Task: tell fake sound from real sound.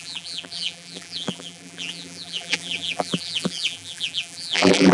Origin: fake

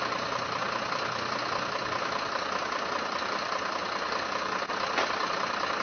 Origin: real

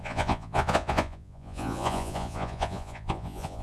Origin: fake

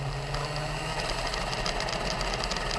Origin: real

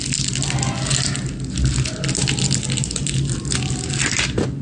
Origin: real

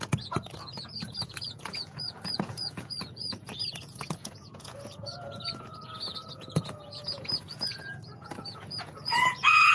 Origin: fake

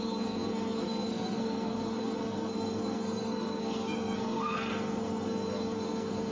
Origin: fake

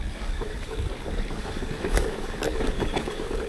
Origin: fake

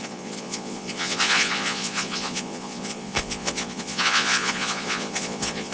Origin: fake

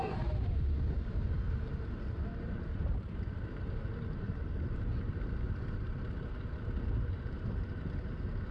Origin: fake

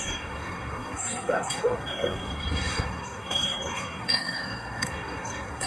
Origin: fake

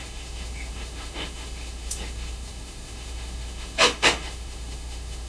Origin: fake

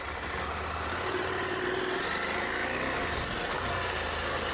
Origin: real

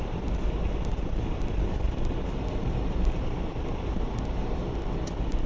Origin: real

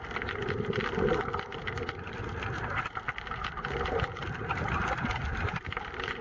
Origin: real